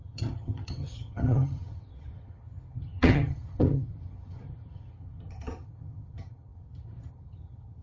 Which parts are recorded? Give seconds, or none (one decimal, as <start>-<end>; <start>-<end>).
none